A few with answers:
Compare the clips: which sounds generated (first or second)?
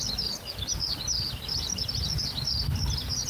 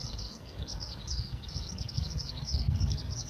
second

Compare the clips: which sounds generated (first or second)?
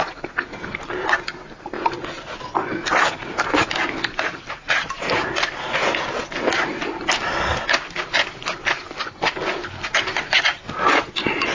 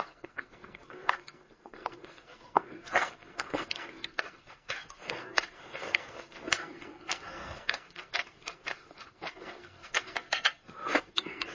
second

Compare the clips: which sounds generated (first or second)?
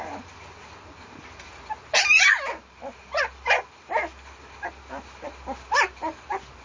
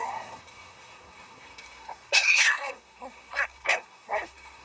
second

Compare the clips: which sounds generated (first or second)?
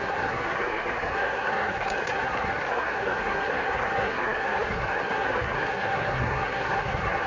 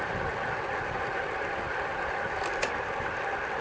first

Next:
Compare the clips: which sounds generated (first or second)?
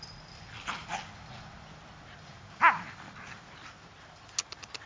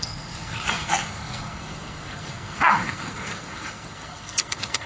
second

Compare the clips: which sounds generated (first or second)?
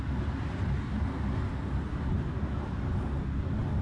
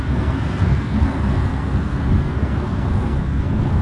second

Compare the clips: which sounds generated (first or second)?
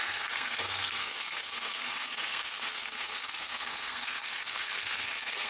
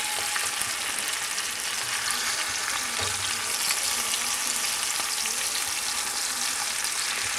first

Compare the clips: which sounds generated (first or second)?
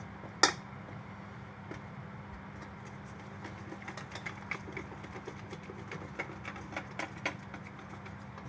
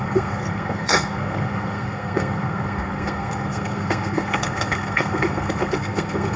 second